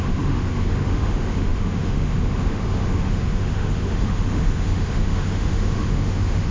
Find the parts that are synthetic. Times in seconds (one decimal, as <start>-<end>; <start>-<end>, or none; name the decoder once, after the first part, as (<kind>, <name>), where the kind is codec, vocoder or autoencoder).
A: 0.0-6.5 (autoencoder, DAC-VAE)

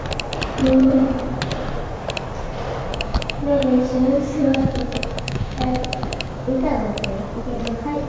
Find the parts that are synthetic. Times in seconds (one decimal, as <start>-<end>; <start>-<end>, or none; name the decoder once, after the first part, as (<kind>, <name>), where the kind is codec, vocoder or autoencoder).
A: 2.9-6.7 (codec, DAC)

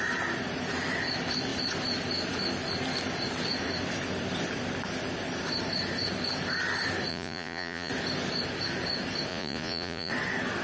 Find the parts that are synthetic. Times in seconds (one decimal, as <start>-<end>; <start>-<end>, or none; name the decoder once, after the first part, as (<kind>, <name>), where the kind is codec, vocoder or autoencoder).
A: 7.1-7.9 (vocoder, Vocos); 9.3-10.1

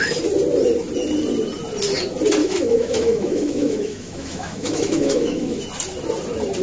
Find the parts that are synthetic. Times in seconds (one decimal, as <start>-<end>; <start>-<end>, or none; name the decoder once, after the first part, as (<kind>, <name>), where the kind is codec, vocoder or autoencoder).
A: 2.4-5.6 (autoencoder, DAC-VAE)

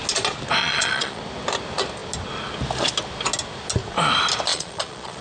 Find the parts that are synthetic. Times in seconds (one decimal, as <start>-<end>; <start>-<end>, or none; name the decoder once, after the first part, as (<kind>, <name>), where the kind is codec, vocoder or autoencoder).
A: 0.6-1.2 (vocoder, Vocos); 4.5-5.2